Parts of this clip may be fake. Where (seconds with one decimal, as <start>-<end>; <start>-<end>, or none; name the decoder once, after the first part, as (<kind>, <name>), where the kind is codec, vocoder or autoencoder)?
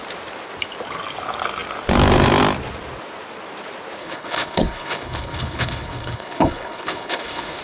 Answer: 4.0-7.6 (codec, HILCodec)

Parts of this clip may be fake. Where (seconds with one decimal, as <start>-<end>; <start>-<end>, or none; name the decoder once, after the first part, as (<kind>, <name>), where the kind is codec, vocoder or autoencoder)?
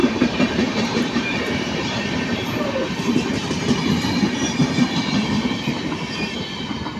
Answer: 0.0-2.9 (vocoder, BigVGAN v2); 4.6-5.9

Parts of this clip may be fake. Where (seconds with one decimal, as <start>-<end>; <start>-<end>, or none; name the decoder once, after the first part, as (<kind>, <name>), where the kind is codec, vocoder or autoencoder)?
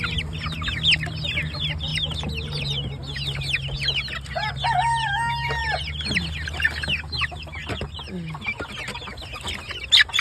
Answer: none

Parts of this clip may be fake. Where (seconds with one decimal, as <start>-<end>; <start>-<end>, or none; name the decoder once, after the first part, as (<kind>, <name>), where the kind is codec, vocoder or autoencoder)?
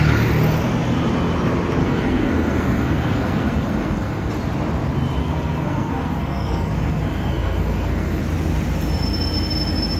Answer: 1.8-4.3 (codec, SNAC); 5.2-8.2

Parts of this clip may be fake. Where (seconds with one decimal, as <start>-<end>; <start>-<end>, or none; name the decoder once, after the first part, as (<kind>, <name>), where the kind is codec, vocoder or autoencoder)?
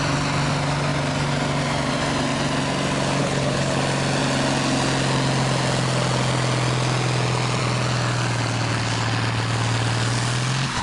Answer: 3.2-3.8 (codec, HILCodec)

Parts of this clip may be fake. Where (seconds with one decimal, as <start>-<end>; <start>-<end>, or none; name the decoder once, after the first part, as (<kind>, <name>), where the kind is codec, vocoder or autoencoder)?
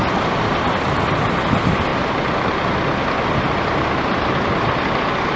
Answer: none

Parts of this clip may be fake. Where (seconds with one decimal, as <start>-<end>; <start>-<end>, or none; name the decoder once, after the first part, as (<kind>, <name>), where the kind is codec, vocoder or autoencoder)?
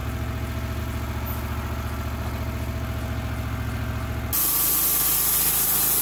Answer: none